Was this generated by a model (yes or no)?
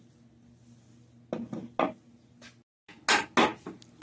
no